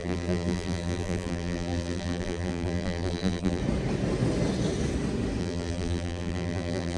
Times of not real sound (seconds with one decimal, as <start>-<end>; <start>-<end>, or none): 0.0-3.6; 5.4-7.0